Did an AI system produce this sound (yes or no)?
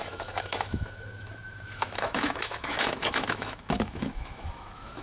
yes